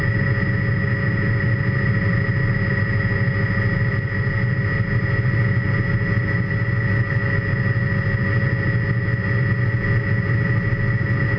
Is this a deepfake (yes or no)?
no